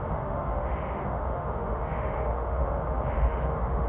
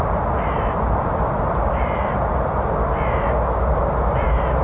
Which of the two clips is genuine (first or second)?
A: second